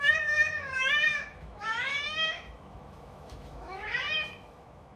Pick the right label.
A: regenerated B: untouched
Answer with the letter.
A